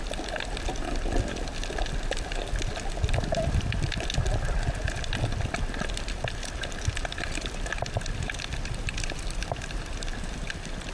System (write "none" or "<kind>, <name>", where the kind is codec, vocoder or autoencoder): vocoder, BigVGAN v2